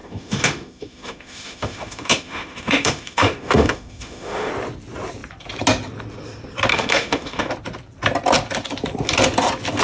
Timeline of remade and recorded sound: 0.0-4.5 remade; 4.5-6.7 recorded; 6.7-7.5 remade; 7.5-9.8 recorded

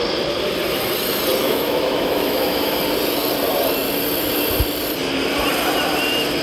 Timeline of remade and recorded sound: 0.0-1.4 recorded; 1.4-2.8 remade; 2.8-6.4 recorded

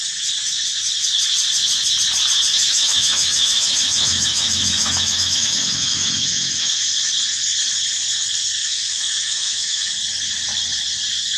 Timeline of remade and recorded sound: 0.0-2.5 recorded; 2.5-6.8 remade; 6.8-8.6 recorded; 8.6-9.9 remade; 9.9-11.4 recorded

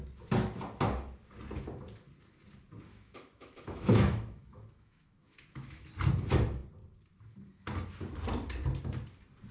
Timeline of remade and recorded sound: 0.0-2.9 recorded; 2.9-5.9 remade; 5.9-9.5 recorded

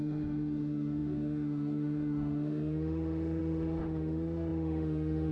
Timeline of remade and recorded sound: 0.0-5.3 remade

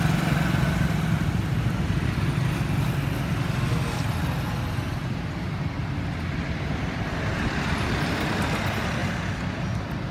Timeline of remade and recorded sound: 0.0-10.1 recorded